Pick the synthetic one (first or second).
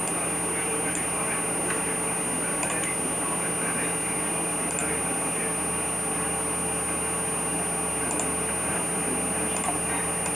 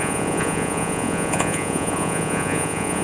second